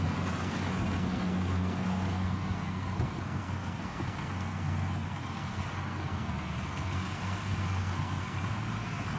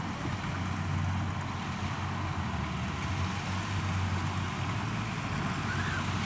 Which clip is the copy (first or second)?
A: first